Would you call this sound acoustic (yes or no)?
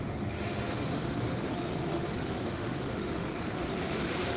no